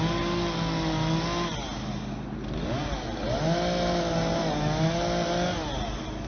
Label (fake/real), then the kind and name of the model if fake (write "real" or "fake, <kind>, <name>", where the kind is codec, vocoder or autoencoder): real